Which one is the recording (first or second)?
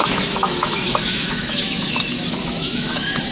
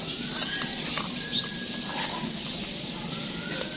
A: second